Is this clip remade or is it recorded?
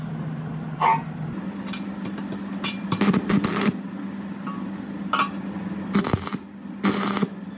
recorded